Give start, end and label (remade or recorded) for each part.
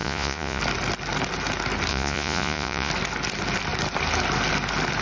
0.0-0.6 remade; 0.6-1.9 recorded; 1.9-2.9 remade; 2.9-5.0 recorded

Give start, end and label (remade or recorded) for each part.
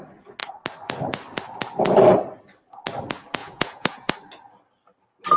0.0-3.4 recorded; 3.4-4.1 remade; 4.1-5.4 recorded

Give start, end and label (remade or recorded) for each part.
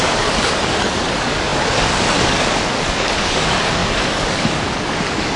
0.0-5.4 remade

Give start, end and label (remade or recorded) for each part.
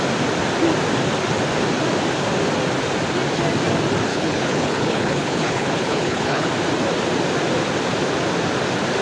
0.0-4.1 recorded; 4.1-6.5 remade; 6.5-9.0 recorded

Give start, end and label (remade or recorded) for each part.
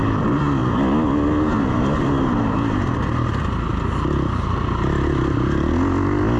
0.0-6.4 recorded